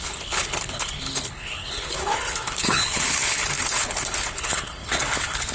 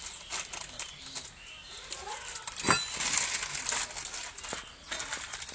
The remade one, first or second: first